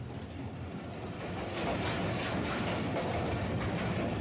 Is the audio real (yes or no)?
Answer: no